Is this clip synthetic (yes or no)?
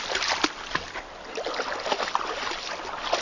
no